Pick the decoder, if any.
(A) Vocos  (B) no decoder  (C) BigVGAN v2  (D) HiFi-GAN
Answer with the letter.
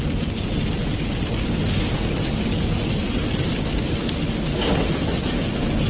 B